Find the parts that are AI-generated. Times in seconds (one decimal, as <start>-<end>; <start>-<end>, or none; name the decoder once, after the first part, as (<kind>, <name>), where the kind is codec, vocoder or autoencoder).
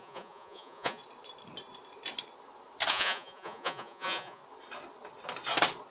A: 0.0-1.0 (vocoder, Vocos); 2.9-4.4